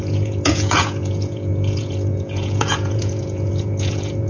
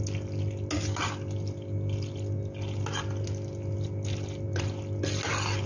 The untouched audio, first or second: second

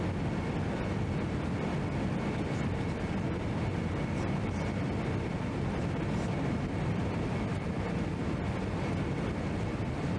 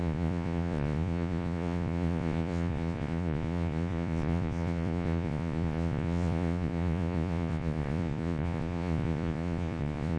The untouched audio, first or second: first